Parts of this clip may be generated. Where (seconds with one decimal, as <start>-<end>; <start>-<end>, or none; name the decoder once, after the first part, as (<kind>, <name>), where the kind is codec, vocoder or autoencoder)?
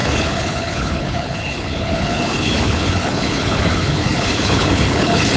0.0-5.4 (codec, HILCodec)